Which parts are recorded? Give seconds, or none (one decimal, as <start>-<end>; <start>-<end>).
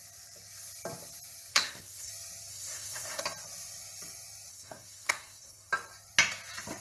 0.0-1.5; 2.1-2.5; 3.2-4.5; 5.7-6.8